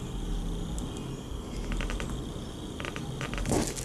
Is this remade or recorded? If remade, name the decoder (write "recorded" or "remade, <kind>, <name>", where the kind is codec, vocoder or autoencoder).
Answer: recorded